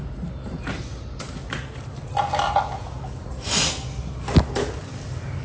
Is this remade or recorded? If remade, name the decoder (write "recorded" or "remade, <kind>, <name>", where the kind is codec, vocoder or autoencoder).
recorded